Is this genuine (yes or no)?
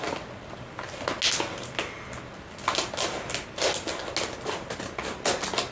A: yes